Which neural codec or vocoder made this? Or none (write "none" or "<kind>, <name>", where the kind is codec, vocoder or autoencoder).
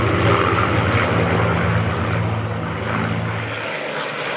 none